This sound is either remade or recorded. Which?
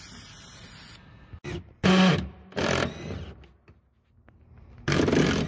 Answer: recorded